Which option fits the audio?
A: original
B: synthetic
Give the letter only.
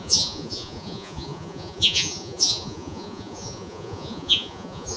B